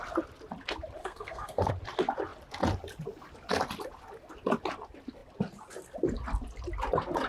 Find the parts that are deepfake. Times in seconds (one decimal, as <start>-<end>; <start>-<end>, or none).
1.0-1.7